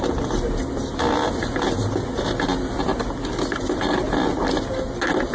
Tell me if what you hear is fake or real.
real